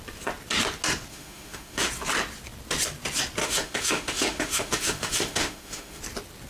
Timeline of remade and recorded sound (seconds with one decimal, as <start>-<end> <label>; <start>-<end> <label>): 0.0-1.1 recorded; 1.1-1.9 remade; 1.9-3.4 recorded; 3.4-6.0 remade; 6.0-6.5 recorded